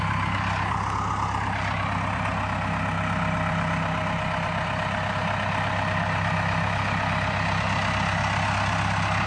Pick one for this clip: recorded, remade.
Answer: recorded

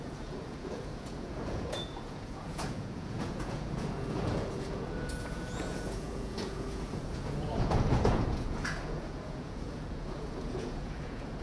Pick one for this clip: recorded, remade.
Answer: remade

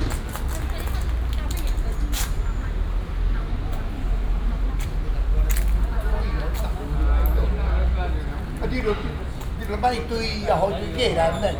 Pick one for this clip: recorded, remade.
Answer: recorded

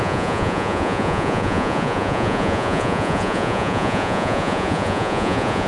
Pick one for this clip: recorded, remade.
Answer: remade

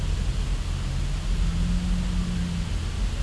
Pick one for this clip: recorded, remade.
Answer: recorded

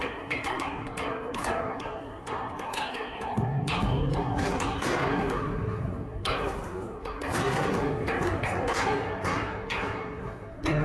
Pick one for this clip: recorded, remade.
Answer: remade